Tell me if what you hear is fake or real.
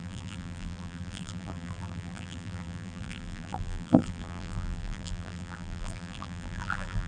fake